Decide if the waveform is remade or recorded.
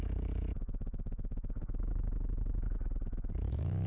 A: remade